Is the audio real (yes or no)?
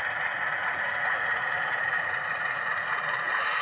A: no